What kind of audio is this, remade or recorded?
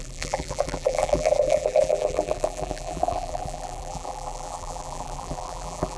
remade